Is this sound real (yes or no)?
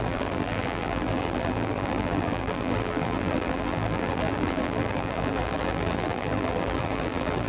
no